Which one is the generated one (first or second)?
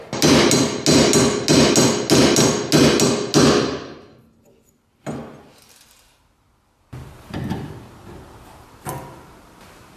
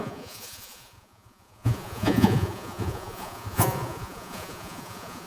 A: second